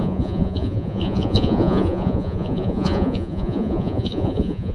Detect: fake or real fake